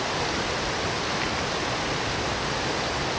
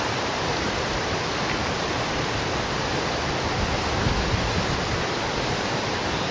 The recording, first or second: first